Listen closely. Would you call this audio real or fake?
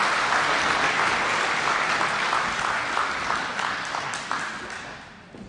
real